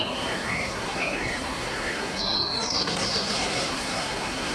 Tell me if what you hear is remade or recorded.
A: remade